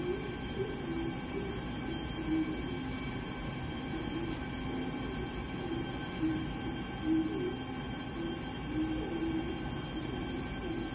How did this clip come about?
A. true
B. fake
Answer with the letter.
A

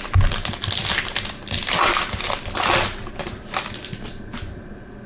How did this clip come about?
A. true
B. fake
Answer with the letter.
A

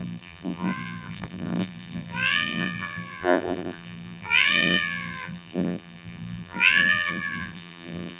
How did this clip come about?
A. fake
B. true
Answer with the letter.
A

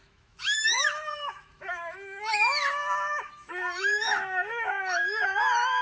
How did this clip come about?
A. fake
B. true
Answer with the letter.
A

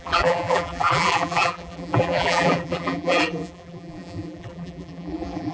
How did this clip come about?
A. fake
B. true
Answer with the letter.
A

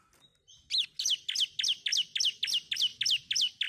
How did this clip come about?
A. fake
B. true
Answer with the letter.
B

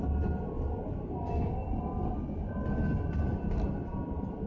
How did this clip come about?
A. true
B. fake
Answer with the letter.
A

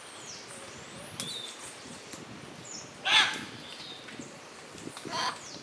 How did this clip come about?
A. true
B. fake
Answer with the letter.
A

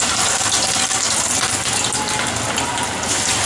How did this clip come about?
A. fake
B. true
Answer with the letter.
B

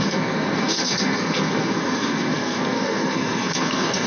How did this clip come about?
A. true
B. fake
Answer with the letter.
B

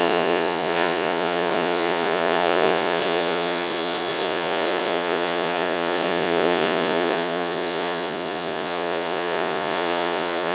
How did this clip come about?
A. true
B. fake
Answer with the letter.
B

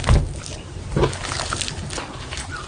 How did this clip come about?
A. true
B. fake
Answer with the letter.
A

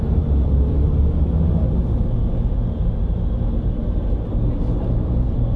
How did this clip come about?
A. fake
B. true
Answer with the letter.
B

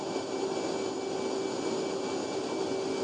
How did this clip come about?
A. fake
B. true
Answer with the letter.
B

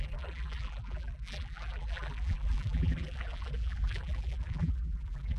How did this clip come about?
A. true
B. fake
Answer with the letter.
B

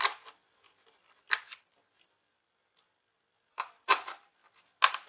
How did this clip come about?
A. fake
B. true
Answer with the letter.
B